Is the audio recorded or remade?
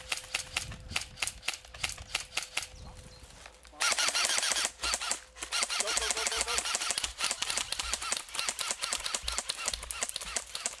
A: recorded